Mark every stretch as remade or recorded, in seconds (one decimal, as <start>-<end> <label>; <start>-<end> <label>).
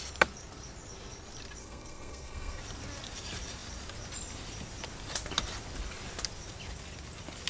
0.0-1.6 recorded; 1.6-2.6 remade; 2.6-7.5 recorded